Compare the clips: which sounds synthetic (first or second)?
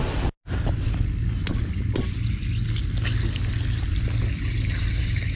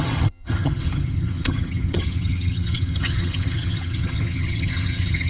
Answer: second